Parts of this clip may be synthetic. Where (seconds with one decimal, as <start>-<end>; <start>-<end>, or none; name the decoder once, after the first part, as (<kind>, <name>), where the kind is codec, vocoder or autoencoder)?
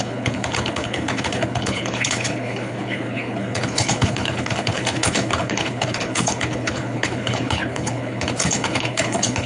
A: 0.0-9.5 (codec, HILCodec)